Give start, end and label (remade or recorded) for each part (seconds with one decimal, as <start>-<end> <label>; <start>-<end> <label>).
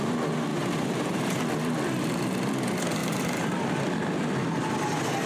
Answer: 0.0-0.5 recorded; 0.5-1.4 remade; 1.4-3.0 recorded; 3.0-3.8 remade; 3.8-5.3 recorded